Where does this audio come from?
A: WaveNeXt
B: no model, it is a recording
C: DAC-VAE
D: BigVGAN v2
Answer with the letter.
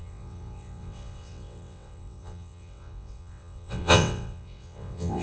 A